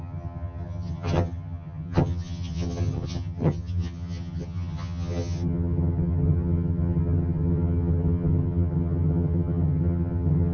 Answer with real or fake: fake